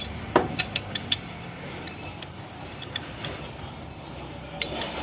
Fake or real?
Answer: fake